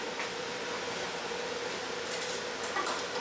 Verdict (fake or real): real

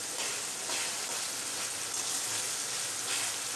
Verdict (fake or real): real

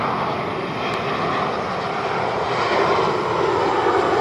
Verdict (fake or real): real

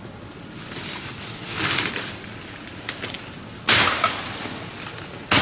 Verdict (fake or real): real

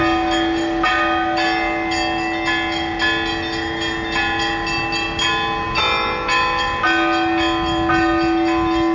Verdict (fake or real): real